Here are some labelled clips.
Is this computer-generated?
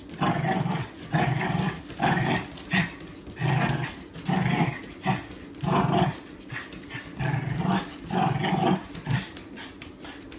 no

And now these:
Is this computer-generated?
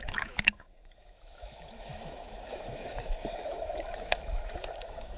yes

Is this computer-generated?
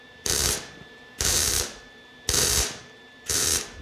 yes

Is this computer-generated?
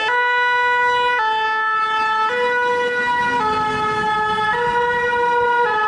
no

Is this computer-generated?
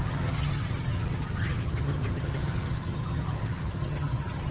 yes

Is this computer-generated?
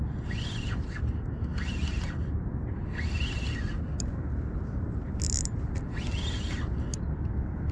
no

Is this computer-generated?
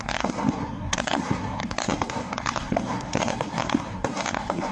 yes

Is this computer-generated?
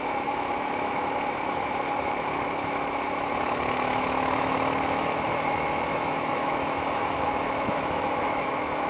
yes